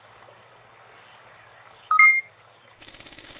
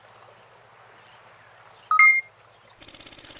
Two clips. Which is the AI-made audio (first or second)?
first